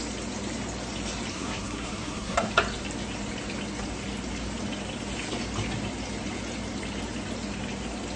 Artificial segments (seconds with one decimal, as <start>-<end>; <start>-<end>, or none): 1.3-2.5